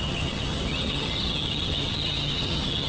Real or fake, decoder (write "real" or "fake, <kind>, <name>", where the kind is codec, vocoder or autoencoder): fake, vocoder, HiFi-GAN